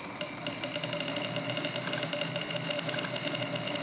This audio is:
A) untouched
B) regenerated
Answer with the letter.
A